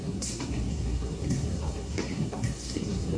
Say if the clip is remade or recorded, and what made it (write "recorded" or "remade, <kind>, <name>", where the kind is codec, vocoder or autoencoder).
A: remade, codec, SNAC